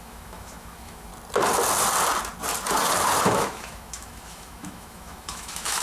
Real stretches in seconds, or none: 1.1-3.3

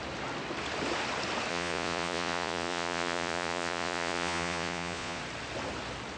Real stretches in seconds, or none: 0.0-1.5; 5.2-6.2

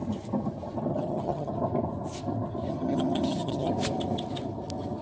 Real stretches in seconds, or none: 0.0-0.9; 1.5-2.7; 3.7-5.0

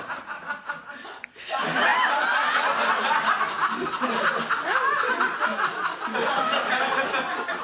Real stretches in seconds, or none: 0.0-7.6